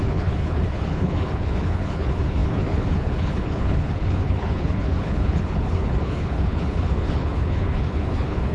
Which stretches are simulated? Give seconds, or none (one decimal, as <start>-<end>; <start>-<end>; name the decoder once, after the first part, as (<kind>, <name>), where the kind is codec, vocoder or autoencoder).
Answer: 0.0-8.5 (codec, HILCodec)